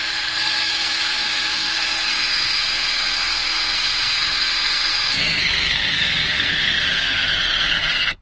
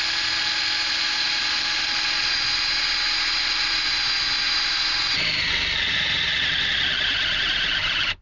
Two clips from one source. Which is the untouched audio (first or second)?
second